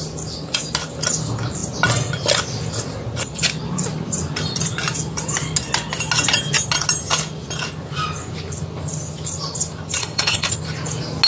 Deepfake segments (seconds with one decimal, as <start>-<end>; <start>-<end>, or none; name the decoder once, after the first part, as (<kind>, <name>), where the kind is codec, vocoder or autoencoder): 10.0-10.5 (codec, HILCodec)